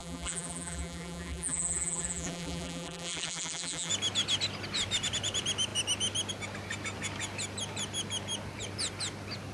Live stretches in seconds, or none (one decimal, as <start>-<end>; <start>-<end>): 3.9-9.5